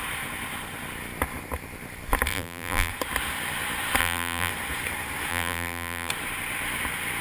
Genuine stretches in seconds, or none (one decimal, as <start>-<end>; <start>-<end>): 0.0-2.3; 2.9-4.0; 4.5-5.3; 6.1-7.2